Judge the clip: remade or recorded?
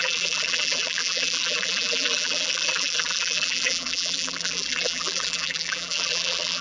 remade